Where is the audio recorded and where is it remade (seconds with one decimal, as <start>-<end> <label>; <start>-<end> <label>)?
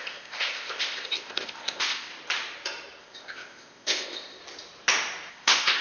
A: 0.0-2.1 remade; 2.1-3.0 recorded; 3.0-4.4 remade; 4.4-5.3 recorded; 5.3-5.8 remade